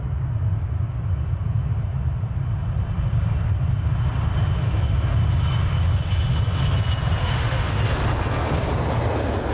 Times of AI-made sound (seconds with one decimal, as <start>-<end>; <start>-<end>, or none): 7.2-7.8